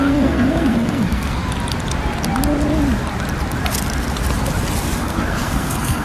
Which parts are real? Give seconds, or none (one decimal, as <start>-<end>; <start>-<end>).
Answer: 1.4-5.0